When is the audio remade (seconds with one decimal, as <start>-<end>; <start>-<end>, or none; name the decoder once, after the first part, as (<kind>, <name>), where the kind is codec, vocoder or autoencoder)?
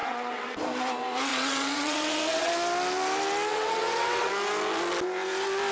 0.0-0.6 (vocoder, WaveNeXt); 1.3-2.5; 3.5-4.3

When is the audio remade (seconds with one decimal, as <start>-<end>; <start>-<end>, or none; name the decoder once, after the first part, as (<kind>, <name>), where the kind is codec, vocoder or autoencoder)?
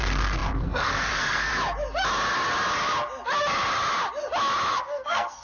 0.0-1.5 (codec, SNAC); 4.7-5.4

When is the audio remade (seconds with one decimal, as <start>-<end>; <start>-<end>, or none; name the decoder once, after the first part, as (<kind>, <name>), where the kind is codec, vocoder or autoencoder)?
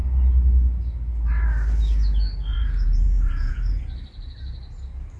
2.5-3.8 (vocoder, Vocos)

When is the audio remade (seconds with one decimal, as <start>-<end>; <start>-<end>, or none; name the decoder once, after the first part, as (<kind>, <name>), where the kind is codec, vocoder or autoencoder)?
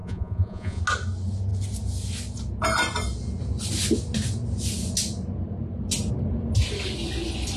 0.0-0.8 (vocoder, Vocos)